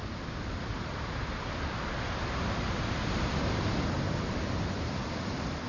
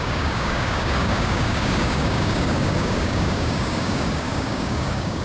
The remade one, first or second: second